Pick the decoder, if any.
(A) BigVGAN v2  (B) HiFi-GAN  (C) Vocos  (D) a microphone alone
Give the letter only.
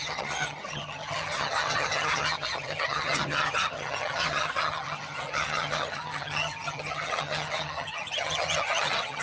B